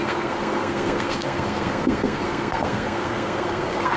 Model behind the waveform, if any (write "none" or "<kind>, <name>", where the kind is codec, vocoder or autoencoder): codec, SNAC